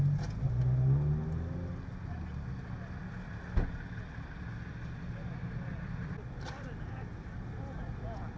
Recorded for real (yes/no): yes